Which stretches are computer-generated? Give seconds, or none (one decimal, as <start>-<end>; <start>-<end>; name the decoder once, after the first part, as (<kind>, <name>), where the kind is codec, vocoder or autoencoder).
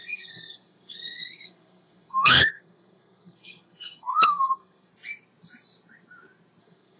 0.0-4.9 (codec, SNAC); 6.6-7.0